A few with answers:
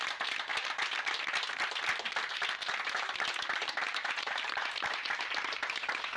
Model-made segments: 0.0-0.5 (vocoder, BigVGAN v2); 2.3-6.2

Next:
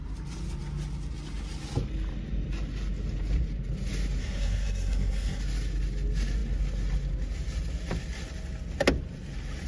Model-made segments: 4.2-5.4 (codec, SNAC)

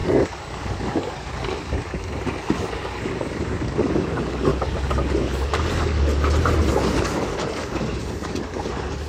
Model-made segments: 0.0-4.5 (codec, DAC); 5.1-6.1; 6.7-9.1

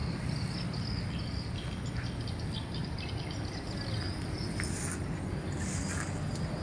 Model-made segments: none

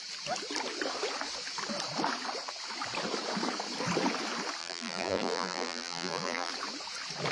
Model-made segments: 4.6-6.5 (vocoder, BigVGAN v2)

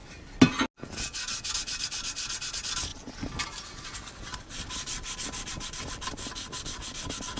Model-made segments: none

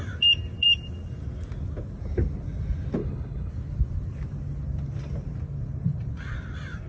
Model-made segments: 3.0-3.5 (codec, HILCodec)

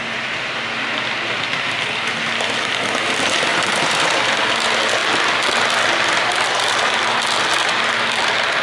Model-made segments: 3.5-4.2 (vocoder, BigVGAN v2)